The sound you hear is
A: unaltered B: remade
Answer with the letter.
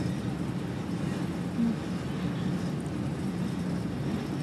B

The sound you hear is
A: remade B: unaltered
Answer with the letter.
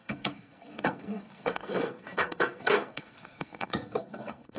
A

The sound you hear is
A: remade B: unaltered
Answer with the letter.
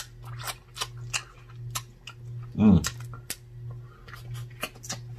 B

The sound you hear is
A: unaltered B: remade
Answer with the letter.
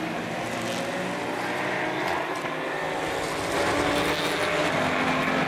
A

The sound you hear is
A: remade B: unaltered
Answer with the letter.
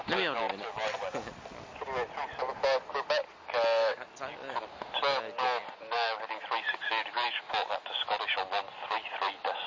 B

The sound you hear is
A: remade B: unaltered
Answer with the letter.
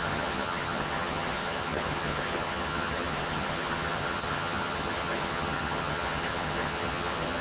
A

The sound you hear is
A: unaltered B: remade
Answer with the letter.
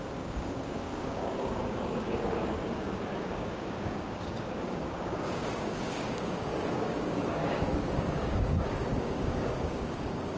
B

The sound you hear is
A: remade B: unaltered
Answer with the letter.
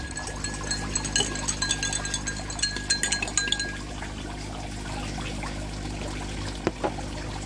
B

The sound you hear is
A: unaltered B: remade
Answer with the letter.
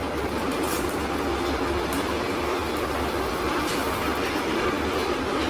A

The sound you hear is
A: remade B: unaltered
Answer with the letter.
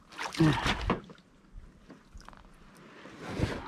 B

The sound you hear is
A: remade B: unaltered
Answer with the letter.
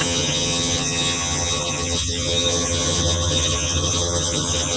A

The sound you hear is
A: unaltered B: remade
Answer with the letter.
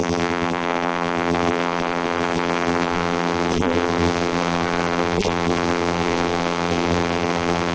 B